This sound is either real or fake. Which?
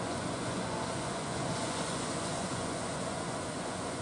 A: fake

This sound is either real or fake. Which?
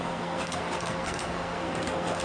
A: fake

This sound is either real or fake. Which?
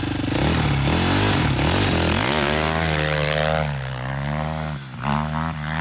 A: real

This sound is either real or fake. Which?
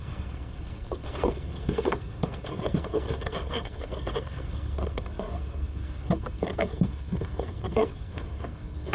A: fake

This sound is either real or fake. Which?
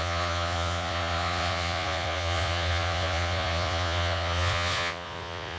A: fake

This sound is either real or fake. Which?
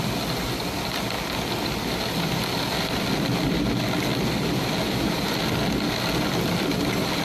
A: real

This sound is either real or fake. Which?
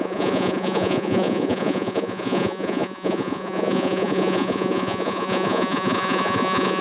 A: fake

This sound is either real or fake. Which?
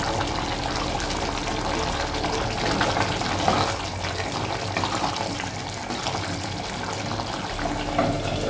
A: real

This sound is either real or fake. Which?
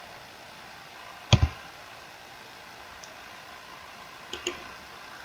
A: real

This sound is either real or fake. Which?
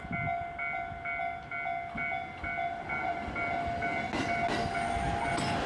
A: real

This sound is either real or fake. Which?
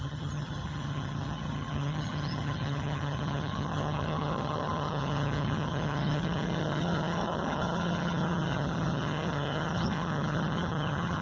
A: fake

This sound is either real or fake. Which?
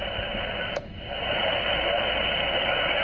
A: real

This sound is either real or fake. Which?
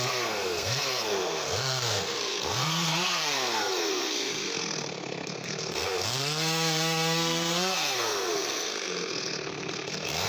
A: fake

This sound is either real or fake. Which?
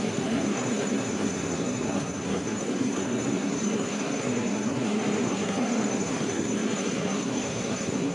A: fake